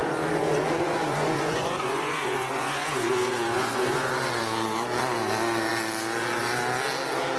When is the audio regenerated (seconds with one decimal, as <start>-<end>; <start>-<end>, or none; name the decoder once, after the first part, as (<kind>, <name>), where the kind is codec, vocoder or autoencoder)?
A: 0.0-4.1 (vocoder, Vocos)